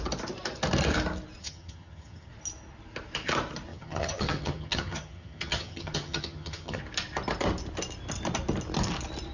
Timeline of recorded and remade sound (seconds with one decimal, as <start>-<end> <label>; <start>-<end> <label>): 0.0-1.4 recorded; 1.4-2.3 remade; 2.3-3.7 recorded; 3.7-6.8 remade; 6.8-9.3 recorded